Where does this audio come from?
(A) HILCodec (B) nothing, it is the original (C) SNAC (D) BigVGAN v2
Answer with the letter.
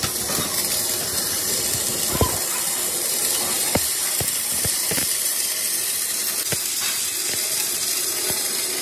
D